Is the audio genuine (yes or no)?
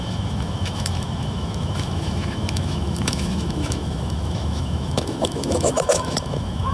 no